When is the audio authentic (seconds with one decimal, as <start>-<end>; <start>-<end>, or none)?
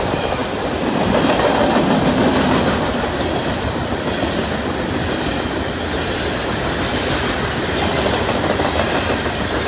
0.0-9.7